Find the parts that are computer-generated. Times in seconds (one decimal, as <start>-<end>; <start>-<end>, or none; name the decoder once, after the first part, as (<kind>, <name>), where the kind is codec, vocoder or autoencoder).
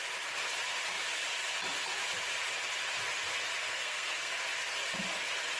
3.6-4.3 (codec, SNAC)